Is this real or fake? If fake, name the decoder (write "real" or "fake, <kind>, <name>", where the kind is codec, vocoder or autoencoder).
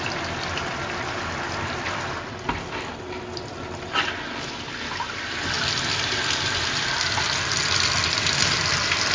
real